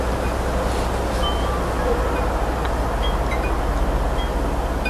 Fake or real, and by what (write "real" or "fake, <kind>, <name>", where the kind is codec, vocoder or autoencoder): real